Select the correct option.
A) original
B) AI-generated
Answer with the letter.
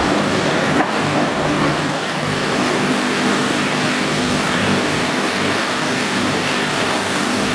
B